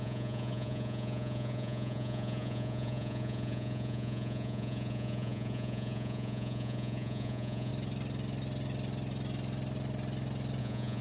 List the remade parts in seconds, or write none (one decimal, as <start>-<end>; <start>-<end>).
0.0-7.7; 10.6-11.0